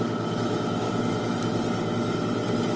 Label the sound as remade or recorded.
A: recorded